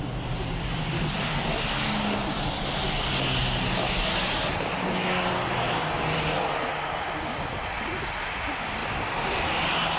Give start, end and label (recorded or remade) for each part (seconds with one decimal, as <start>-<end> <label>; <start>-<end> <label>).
0.0-10.0 recorded